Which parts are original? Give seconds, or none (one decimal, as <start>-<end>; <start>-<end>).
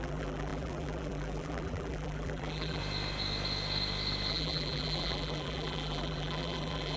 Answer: 2.8-4.3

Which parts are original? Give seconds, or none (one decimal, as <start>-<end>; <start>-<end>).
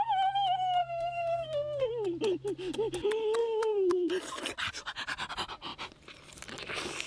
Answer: 0.0-0.8; 1.9-3.4; 4.1-7.1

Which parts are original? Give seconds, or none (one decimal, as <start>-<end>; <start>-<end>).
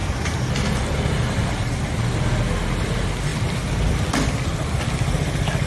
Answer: 0.0-3.3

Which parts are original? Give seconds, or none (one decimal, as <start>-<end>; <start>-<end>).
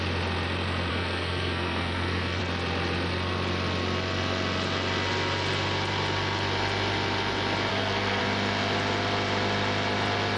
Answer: 0.0-0.9; 2.4-7.7; 8.2-10.4